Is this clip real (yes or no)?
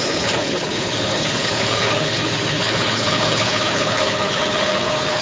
no